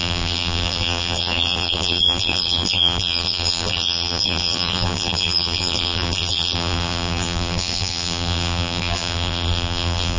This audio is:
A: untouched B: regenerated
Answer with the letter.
B